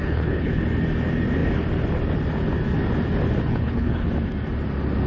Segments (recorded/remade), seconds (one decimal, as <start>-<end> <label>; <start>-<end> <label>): 0.0-0.6 remade; 0.6-3.5 recorded; 3.5-4.1 remade; 4.1-5.1 recorded